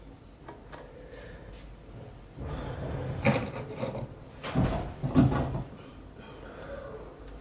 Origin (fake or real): real